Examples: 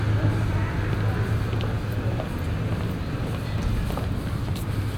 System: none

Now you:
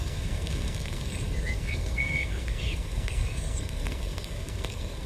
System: codec, SNAC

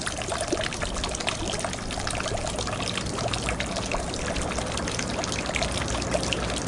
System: none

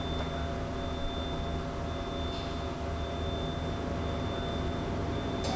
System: none